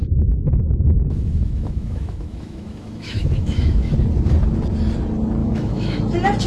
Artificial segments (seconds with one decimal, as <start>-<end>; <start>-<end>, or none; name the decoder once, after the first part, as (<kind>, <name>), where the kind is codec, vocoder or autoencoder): 0.0-3.9 (autoencoder, DAC-VAE); 5.4-6.0